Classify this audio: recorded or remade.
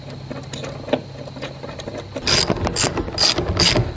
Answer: recorded